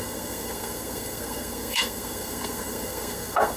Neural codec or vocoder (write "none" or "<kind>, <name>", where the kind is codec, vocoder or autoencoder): codec, SNAC